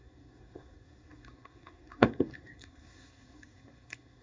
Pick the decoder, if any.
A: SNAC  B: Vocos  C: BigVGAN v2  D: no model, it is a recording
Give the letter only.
A